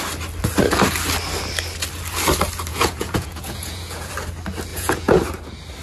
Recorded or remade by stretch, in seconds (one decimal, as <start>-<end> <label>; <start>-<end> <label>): 0.0-2.7 recorded; 2.7-4.1 remade; 4.1-4.7 recorded; 4.7-5.2 remade; 5.2-5.8 recorded